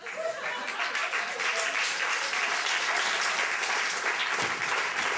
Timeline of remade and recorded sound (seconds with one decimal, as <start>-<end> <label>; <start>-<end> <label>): 0.0-5.2 recorded